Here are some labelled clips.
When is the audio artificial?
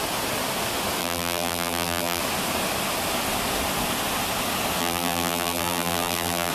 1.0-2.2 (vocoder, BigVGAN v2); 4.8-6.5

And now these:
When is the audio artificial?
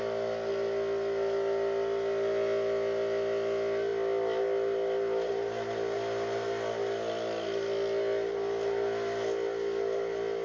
none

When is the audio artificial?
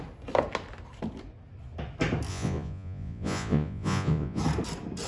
2.3-4.4 (vocoder, Vocos)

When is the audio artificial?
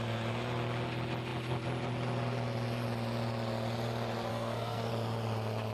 4.3-4.9 (codec, SNAC)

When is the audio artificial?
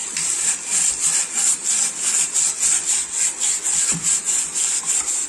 none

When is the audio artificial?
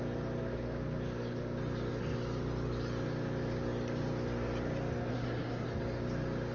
5.1-5.7 (codec, SNAC)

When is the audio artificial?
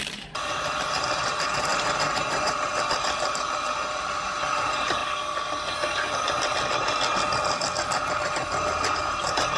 0.0-5.0 (vocoder, BigVGAN v2); 8.9-9.6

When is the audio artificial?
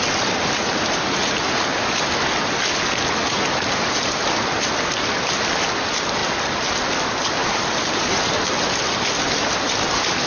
7.4-8.3 (vocoder, BigVGAN v2)